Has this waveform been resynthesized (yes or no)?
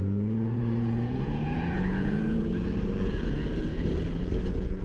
yes